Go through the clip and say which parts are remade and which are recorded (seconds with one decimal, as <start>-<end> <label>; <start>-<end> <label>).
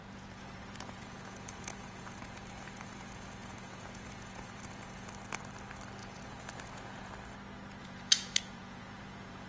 0.0-5.1 remade; 5.1-6.0 recorded; 6.0-7.1 remade; 7.1-7.8 recorded; 7.8-9.5 remade